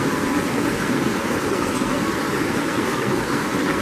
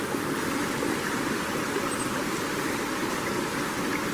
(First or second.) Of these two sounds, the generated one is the first